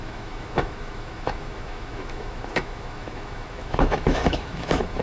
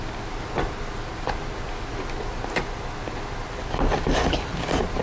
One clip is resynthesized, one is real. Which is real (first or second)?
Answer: second